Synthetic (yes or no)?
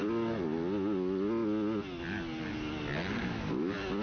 no